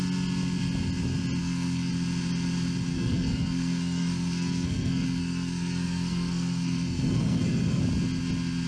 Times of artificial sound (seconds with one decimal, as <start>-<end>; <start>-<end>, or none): 1.4-1.9; 2.9-7.8